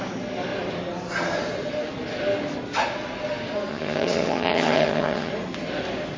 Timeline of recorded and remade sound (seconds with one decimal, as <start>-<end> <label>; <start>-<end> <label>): 0.0-3.7 recorded; 3.7-5.3 remade; 5.3-6.2 recorded